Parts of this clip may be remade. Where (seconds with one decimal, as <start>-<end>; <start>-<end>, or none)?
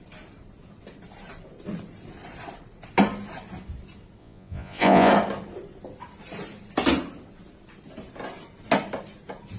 4.2-5.1